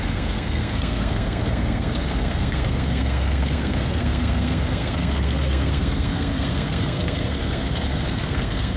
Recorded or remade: remade